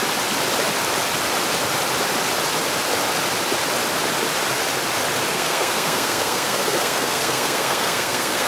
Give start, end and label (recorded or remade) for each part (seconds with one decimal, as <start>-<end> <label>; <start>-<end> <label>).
0.0-5.3 recorded; 5.3-8.5 remade